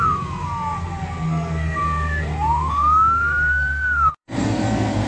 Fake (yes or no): yes